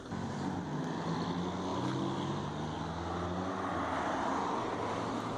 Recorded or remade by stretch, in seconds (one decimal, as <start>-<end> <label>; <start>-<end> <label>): 0.0-5.4 recorded